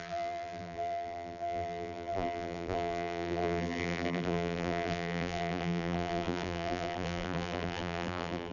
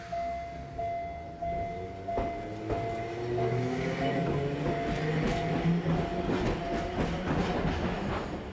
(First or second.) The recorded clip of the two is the second